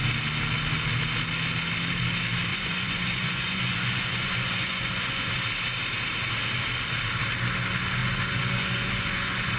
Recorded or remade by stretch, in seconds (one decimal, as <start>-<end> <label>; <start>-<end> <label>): 0.0-2.5 recorded; 2.5-5.3 remade; 5.3-8.0 recorded; 8.0-9.6 remade